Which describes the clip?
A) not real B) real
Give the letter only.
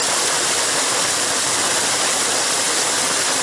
B